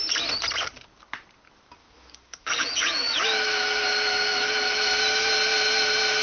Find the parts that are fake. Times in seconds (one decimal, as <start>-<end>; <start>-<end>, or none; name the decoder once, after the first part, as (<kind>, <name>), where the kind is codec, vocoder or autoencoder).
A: 1.8-5.0 (autoencoder, DAC-VAE)